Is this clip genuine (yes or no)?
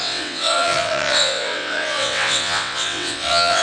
no